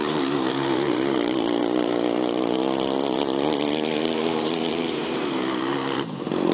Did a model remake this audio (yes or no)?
yes